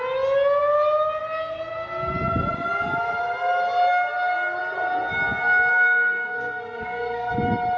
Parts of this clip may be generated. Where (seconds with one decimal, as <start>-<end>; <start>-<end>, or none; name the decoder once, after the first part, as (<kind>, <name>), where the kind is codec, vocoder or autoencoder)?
5.7-7.3 (codec, SNAC)